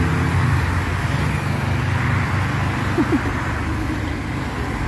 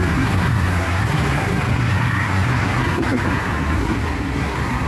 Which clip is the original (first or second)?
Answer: first